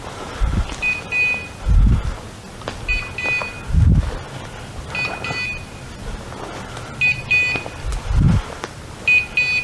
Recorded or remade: recorded